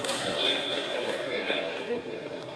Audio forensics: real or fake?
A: fake